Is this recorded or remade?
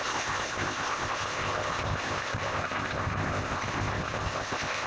remade